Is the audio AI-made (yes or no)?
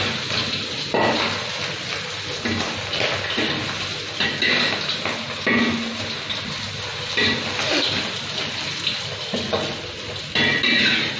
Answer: no